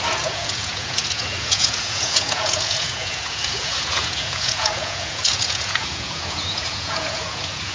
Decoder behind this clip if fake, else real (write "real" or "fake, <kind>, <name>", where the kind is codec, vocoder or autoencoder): fake, vocoder, Vocos